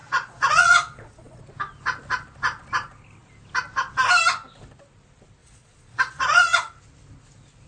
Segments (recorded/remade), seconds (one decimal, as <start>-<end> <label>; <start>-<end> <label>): 0.0-1.4 remade; 1.4-5.4 recorded; 5.4-6.7 remade; 6.7-7.7 recorded